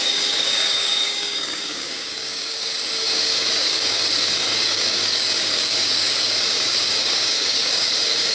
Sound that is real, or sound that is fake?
fake